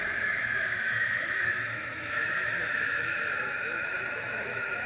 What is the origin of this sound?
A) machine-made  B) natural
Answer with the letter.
A